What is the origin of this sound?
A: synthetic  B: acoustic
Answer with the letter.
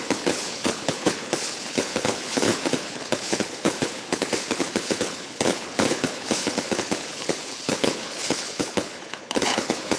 A